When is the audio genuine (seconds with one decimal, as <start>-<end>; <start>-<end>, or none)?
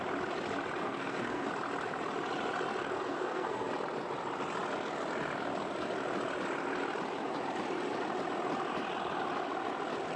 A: 0.0-0.8; 1.5-2.8; 3.7-10.2